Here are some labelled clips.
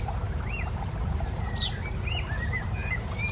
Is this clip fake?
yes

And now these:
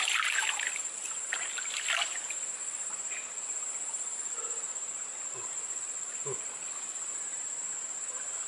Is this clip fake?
no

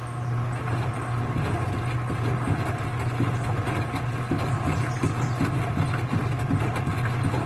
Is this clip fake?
no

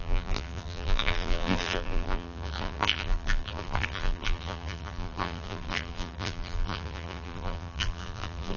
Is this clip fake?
yes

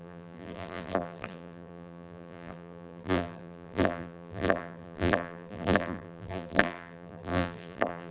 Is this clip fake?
yes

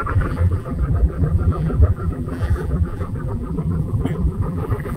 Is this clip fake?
yes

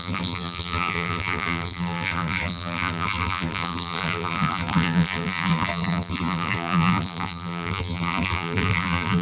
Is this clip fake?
yes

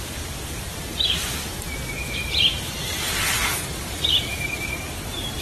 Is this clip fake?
yes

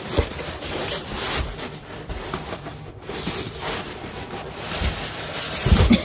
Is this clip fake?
yes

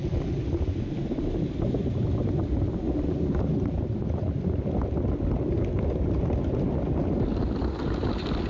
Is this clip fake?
no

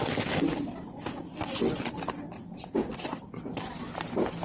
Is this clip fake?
yes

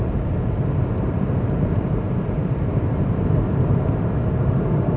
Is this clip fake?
yes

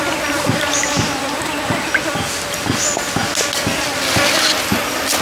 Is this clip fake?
no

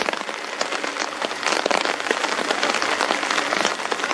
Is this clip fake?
no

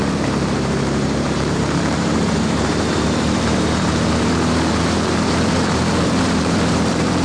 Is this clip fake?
yes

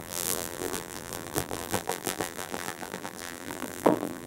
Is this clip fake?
yes